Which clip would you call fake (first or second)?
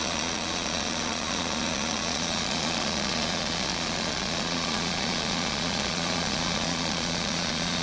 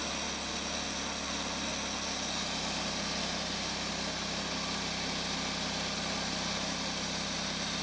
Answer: first